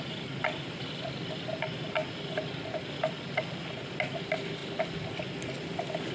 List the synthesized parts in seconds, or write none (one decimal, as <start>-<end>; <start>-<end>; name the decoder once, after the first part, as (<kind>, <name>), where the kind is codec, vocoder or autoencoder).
none